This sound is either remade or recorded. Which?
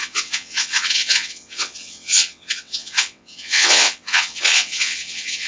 remade